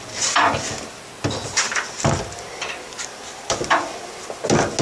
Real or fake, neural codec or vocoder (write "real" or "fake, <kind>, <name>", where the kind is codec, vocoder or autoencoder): real